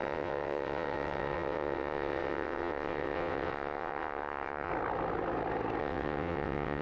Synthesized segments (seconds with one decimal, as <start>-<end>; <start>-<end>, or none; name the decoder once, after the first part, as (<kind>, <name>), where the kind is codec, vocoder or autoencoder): 0.0-4.7 (vocoder, WaveNeXt); 5.8-6.8